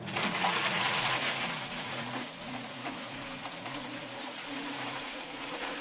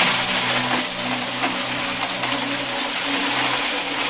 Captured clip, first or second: second